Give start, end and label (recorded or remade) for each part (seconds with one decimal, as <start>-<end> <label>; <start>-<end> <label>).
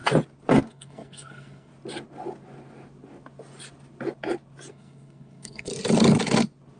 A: 0.0-0.7 recorded; 0.7-1.7 remade; 1.7-4.7 recorded; 4.7-5.7 remade; 5.7-6.8 recorded